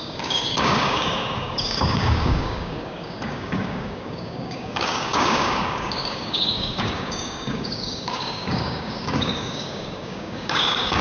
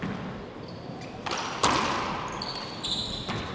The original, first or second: second